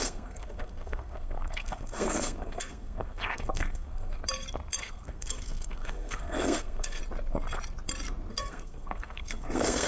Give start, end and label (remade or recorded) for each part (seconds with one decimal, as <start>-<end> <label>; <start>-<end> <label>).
0.0-4.2 remade; 4.2-4.8 recorded; 4.8-7.0 remade; 7.0-8.3 recorded; 8.3-9.9 remade